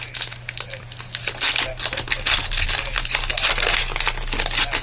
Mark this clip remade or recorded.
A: recorded